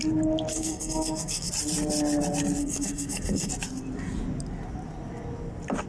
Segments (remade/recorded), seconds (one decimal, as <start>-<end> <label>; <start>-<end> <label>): 0.0-0.5 recorded; 0.5-1.5 remade; 1.5-2.6 recorded; 2.6-3.5 remade; 3.5-5.9 recorded